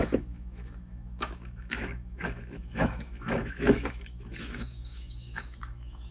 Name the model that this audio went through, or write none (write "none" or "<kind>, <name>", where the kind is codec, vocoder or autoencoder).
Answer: autoencoder, DAC-VAE